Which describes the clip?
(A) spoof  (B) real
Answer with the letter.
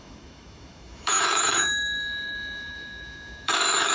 A